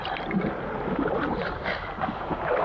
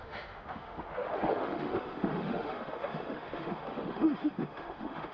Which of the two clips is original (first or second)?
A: first